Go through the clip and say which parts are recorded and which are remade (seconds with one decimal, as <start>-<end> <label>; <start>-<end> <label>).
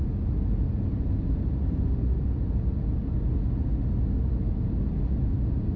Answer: 0.0-5.8 recorded